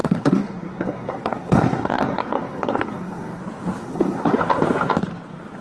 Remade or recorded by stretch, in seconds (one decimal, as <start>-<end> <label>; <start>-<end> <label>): 0.0-3.4 remade; 3.4-3.8 recorded; 3.8-4.4 remade; 4.4-5.6 recorded